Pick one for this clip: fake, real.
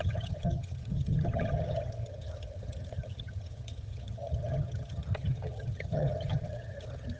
fake